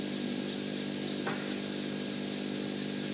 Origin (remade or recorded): recorded